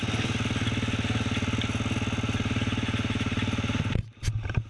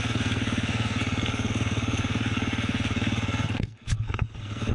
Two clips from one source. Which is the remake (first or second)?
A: second